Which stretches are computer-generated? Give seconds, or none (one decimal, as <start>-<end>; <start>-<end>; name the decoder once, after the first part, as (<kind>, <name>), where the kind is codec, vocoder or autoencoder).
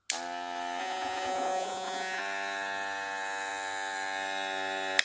0.8-2.2 (vocoder, Vocos)